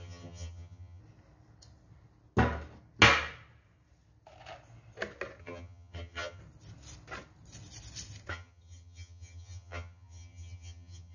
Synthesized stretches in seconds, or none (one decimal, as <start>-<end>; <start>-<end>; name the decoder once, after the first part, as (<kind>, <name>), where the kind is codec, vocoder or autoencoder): 0.0-1.0 (vocoder, HiFi-GAN); 5.4-6.4; 8.3-11.1